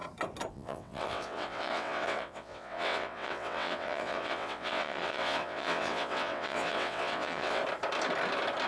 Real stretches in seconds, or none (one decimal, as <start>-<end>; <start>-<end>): 0.0-0.5; 7.6-8.7